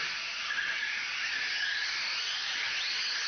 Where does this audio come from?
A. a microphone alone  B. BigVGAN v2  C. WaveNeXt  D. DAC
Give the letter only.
A